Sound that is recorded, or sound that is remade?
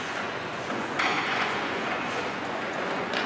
remade